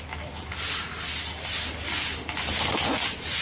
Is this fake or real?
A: real